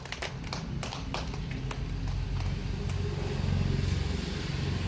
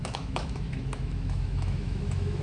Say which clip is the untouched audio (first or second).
first